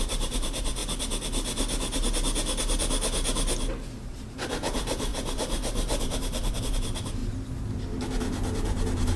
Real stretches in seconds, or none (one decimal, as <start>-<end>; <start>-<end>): 0.8-4.0